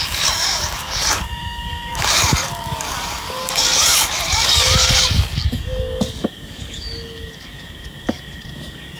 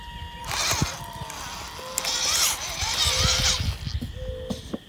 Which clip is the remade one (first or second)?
first